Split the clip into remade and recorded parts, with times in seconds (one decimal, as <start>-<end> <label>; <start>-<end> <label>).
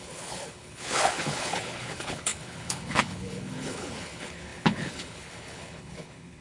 0.0-6.4 remade